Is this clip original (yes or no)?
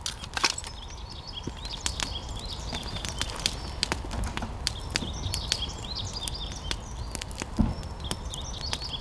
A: yes